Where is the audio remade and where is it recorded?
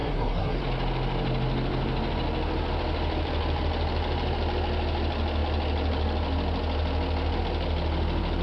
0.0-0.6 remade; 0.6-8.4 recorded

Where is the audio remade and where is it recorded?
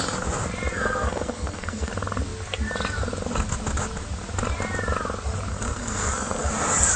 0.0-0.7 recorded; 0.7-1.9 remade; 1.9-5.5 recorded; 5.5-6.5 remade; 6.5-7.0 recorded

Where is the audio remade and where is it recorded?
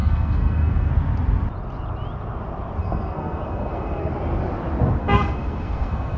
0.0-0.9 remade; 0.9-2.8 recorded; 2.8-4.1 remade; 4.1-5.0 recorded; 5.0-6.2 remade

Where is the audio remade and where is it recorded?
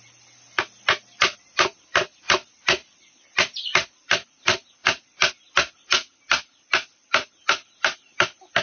0.0-8.6 recorded